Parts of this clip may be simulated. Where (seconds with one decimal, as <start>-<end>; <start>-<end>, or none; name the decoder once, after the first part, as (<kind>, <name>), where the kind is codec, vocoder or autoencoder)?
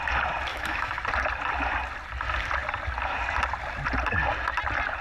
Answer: 0.5-1.0 (autoencoder, DAC-VAE)